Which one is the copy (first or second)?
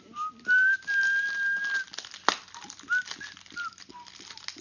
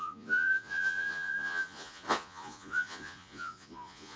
second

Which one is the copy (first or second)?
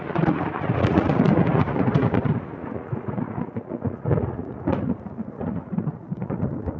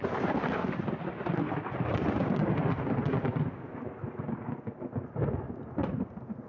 first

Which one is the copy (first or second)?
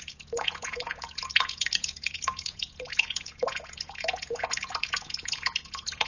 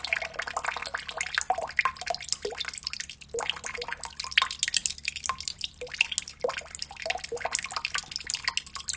first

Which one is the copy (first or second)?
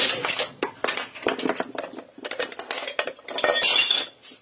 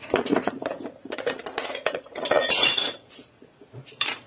second